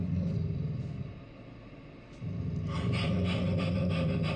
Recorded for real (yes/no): yes